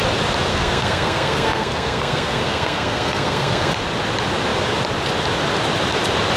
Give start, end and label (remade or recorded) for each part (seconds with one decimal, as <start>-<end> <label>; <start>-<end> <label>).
0.0-0.5 recorded; 0.5-3.7 remade; 3.7-6.4 recorded